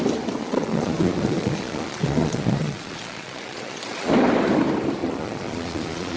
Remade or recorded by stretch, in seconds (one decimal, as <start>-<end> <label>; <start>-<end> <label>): 0.0-0.4 recorded; 0.4-4.1 remade; 4.1-5.0 recorded; 5.0-6.2 remade